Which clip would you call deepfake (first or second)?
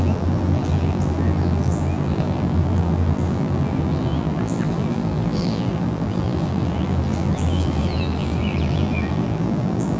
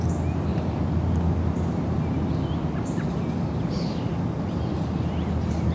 first